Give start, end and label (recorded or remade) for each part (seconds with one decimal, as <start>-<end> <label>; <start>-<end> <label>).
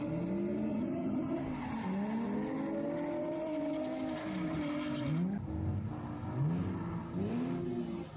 0.0-0.7 recorded; 0.7-1.4 remade; 1.4-8.2 recorded